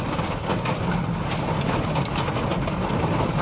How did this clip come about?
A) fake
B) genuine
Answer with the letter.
B